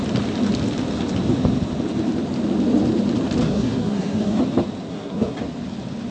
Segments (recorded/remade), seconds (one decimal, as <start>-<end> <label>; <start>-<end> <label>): 0.0-3.4 recorded; 3.4-4.4 remade; 4.4-4.9 recorded; 4.9-5.4 remade; 5.4-6.1 recorded